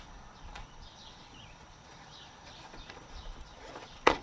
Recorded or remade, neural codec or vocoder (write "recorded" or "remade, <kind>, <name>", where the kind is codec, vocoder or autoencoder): remade, vocoder, Vocos